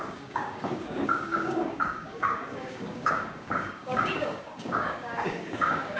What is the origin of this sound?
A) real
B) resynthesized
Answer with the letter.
B